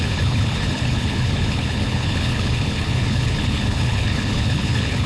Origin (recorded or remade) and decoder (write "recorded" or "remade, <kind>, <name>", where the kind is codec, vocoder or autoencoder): remade, codec, HILCodec